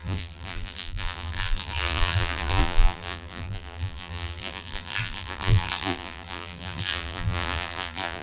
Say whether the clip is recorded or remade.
remade